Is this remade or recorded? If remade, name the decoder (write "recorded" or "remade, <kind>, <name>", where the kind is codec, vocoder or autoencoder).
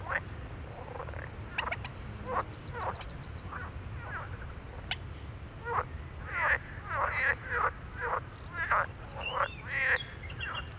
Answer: recorded